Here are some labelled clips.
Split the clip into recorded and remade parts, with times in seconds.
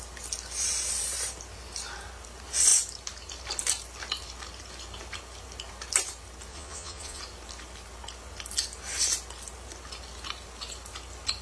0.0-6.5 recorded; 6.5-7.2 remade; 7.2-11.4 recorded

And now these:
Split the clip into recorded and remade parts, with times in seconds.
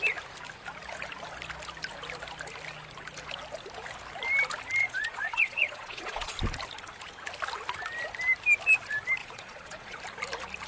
0.0-4.8 recorded; 4.8-6.3 remade; 6.3-9.2 recorded; 9.2-10.0 remade; 10.0-10.7 recorded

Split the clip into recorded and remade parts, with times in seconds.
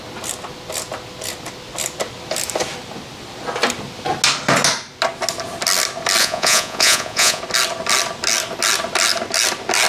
0.0-6.2 recorded; 6.2-7.4 remade; 7.4-9.9 recorded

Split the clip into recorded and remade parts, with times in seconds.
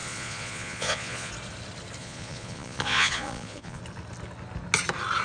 0.0-1.3 remade; 1.3-2.0 recorded; 2.0-3.8 remade; 3.8-5.2 recorded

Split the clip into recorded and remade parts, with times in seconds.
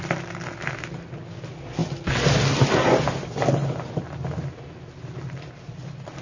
0.0-6.2 recorded